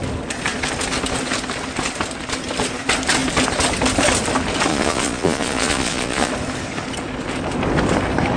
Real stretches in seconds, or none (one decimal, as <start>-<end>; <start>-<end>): 0.0-4.7; 6.3-8.4